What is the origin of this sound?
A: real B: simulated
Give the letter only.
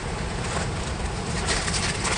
A